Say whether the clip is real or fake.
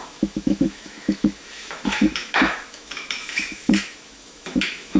fake